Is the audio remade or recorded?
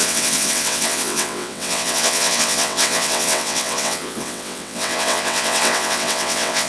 remade